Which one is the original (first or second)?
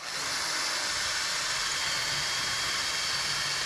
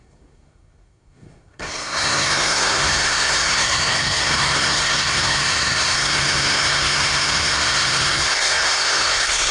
first